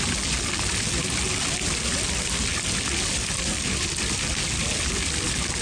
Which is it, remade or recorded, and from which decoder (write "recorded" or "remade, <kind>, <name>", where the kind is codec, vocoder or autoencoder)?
recorded